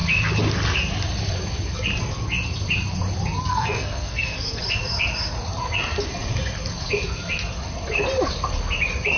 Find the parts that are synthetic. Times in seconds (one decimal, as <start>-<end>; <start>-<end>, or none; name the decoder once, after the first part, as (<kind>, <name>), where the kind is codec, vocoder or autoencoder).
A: 3.5-4.6 (codec, SNAC)